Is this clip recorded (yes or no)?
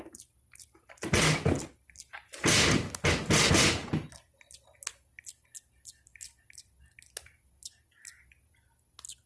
yes